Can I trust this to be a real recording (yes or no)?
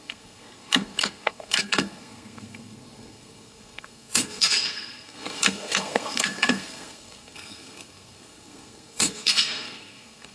no